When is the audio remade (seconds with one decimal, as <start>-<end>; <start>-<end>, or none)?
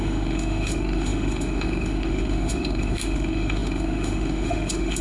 0.0-5.0